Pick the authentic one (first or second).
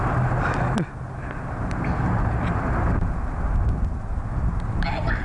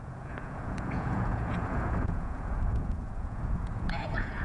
first